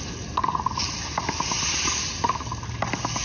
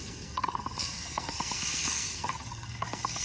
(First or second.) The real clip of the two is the first